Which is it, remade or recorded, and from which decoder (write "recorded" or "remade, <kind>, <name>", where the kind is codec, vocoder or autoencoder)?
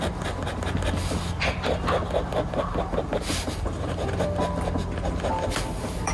recorded